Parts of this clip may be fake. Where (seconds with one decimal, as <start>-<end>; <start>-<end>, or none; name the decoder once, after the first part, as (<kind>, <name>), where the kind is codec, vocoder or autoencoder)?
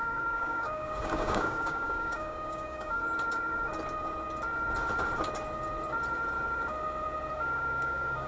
0.0-3.0 (codec, DAC); 7.3-8.3